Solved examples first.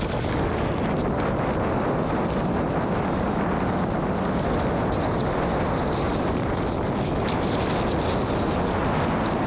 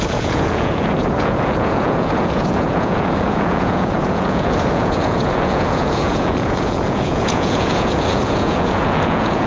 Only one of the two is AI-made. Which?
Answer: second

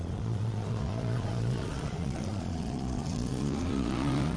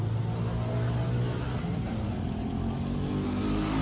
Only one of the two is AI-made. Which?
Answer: first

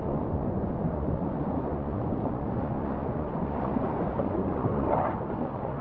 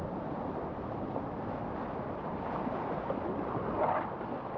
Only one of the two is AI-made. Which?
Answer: first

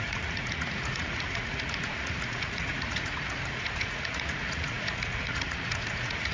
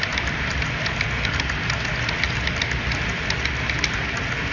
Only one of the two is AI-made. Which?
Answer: first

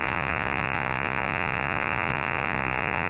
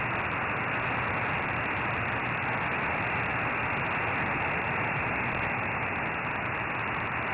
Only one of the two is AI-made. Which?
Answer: first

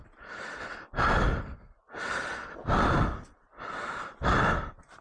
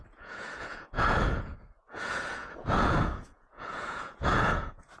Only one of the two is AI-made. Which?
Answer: second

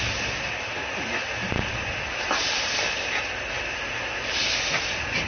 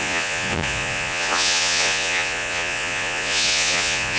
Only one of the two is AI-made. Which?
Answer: second